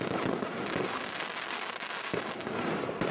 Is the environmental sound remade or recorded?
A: remade